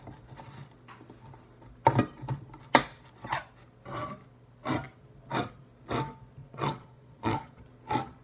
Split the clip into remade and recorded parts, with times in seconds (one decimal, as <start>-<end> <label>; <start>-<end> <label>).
0.0-6.4 recorded; 6.4-7.6 remade; 7.6-8.2 recorded